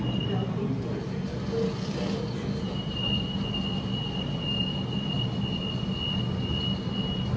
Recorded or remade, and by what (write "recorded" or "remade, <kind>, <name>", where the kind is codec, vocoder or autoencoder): recorded